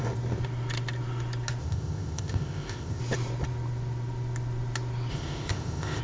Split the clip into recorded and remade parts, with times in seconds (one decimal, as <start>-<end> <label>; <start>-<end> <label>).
0.0-1.6 recorded; 1.6-3.0 remade; 3.0-5.1 recorded; 5.1-6.0 remade